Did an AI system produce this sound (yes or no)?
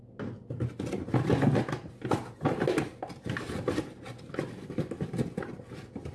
no